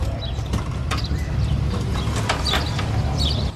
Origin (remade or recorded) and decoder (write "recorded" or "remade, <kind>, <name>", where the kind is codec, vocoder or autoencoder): remade, vocoder, BigVGAN v2